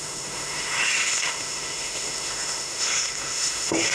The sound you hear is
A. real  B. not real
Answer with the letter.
B